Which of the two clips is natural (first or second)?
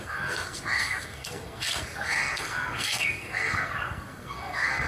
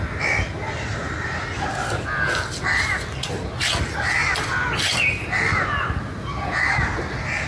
second